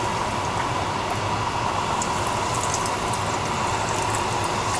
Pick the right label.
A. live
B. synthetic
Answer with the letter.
A